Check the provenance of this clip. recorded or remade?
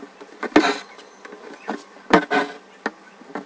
recorded